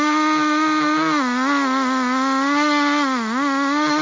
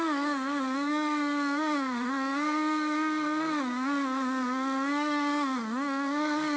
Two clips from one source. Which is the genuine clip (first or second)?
first